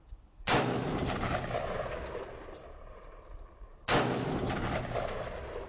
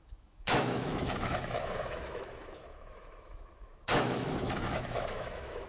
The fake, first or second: second